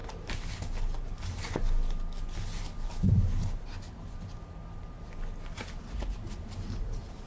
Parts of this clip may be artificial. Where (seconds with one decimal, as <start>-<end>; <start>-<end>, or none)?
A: none